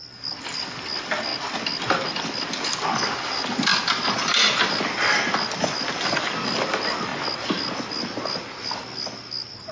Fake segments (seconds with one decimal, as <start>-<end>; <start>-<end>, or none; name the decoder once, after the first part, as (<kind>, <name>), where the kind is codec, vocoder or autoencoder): none